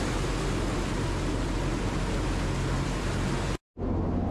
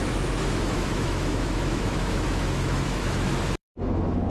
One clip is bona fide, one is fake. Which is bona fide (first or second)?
first